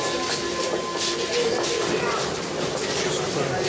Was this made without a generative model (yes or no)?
yes